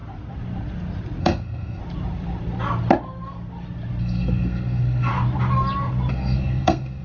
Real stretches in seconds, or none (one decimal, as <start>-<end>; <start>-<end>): 0.0-1.2; 1.8-4.0; 5.1-6.1